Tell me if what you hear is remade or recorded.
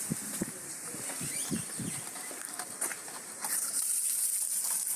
remade